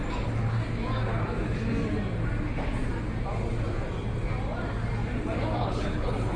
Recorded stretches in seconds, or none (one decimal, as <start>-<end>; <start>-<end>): 0.0-5.6